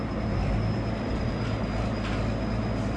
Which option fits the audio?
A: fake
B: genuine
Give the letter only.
B